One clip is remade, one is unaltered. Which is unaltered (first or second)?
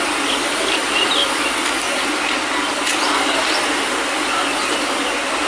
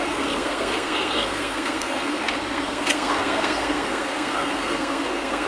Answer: first